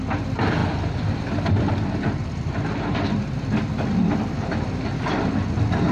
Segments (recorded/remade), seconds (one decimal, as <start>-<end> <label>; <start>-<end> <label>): 0.0-5.9 remade